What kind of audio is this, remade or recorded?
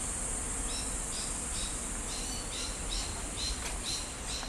recorded